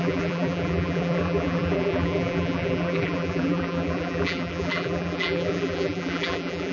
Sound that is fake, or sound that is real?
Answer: fake